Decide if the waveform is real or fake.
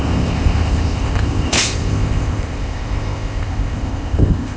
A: fake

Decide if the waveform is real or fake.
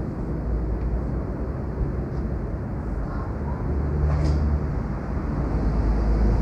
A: real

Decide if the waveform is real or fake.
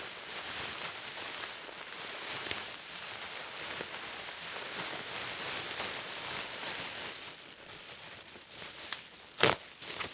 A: real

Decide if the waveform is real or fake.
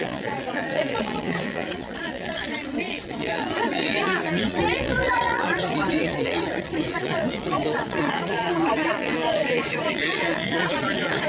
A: fake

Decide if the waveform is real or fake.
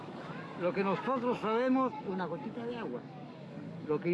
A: fake